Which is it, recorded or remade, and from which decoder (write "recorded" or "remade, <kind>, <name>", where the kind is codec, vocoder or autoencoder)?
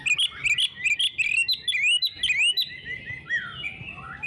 recorded